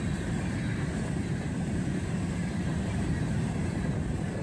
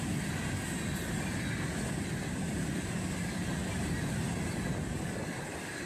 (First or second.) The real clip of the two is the second